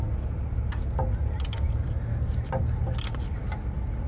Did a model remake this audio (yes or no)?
no